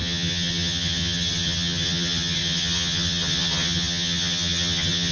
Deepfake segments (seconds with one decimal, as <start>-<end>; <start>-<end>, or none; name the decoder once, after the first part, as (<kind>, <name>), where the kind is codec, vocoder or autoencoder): 0.0-5.1 (vocoder, HiFi-GAN)